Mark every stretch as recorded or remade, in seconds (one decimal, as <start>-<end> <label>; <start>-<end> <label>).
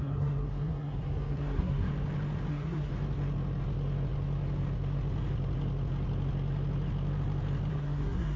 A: 0.0-1.9 remade; 1.9-2.5 recorded; 2.5-2.9 remade; 2.9-7.7 recorded; 7.7-8.4 remade